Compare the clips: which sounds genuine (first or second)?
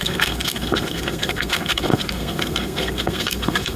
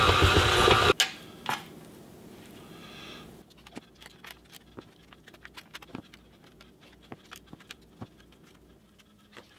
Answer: second